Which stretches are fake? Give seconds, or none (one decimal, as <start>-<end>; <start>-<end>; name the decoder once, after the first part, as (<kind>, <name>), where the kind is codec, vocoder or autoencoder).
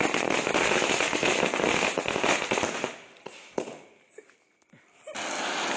none